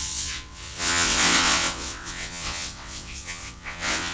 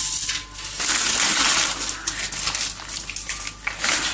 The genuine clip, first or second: second